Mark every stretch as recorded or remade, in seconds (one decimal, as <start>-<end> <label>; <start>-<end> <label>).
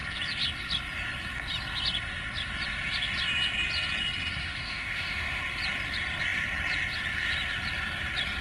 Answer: 0.0-4.4 recorded; 4.4-5.4 remade; 5.4-8.4 recorded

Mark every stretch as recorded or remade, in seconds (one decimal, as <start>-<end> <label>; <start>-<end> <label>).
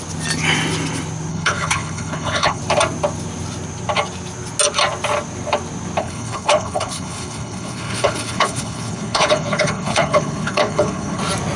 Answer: 0.0-1.3 recorded; 1.3-2.6 remade; 2.6-6.0 recorded; 6.0-11.2 remade; 11.2-11.6 recorded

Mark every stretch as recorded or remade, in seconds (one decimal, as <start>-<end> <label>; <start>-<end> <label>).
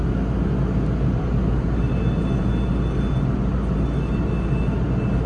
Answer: 0.0-5.3 recorded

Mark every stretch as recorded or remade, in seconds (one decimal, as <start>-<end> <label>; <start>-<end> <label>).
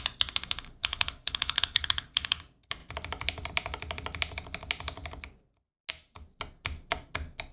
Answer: 0.0-0.8 recorded; 0.8-2.4 remade; 2.4-7.5 recorded